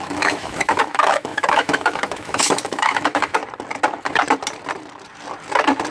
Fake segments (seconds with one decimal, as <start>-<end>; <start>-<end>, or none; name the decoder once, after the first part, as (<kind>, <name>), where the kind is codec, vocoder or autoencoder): 0.0-3.4 (autoencoder, DAC-VAE)